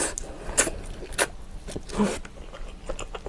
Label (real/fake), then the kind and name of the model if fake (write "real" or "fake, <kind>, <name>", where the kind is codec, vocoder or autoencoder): real